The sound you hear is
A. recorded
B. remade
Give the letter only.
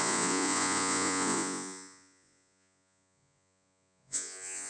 B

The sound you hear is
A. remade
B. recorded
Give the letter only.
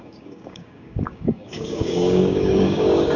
A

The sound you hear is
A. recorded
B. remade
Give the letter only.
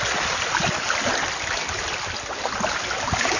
A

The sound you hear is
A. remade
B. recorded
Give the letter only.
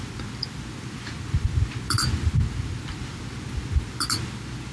A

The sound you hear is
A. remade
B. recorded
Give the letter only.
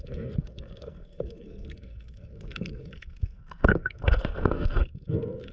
A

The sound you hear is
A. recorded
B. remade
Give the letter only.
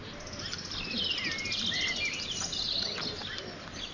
A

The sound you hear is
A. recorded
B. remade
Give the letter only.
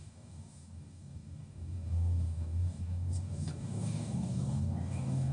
B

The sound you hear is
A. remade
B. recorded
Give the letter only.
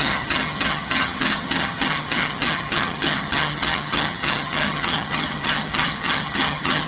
A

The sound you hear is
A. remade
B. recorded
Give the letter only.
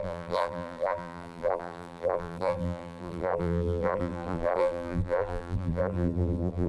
A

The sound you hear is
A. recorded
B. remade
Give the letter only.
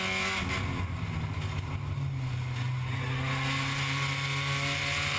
A